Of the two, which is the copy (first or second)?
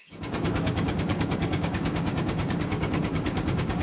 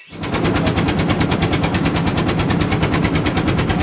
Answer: first